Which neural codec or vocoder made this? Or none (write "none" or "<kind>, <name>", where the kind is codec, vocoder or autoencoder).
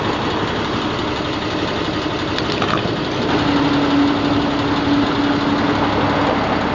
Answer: none